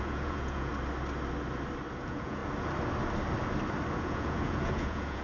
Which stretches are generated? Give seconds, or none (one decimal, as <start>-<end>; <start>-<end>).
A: 0.0-0.7; 1.9-2.4; 3.9-5.2